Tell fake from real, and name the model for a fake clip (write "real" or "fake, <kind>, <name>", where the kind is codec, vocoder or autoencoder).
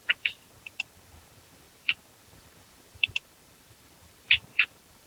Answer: fake, vocoder, BigVGAN v2